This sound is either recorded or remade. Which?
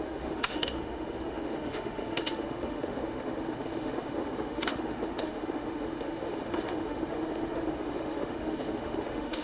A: remade